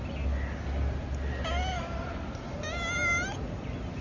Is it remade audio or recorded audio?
recorded